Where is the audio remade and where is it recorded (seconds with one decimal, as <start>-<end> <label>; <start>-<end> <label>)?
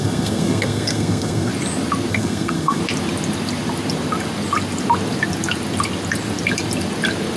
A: 0.0-1.5 remade; 1.5-2.1 recorded; 2.1-2.8 remade; 2.8-7.4 recorded